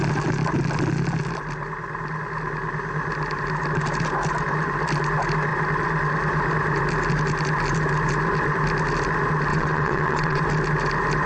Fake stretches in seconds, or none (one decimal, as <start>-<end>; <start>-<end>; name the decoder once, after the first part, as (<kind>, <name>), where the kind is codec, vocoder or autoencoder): 9.5-10.4 (vocoder, WaveNeXt)